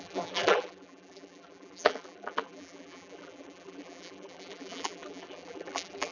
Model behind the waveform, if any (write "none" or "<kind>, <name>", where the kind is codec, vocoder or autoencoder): vocoder, BigVGAN v2